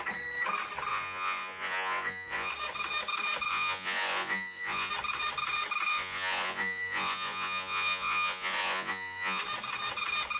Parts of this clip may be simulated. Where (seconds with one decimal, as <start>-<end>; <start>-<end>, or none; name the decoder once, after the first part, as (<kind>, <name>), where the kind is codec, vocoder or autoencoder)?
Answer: 0.9-2.5 (vocoder, Vocos); 3.5-4.9; 5.9-9.4